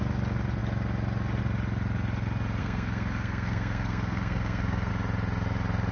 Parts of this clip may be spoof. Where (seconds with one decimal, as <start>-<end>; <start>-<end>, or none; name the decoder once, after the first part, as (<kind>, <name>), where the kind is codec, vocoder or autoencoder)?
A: 2.6-4.9 (codec, SNAC)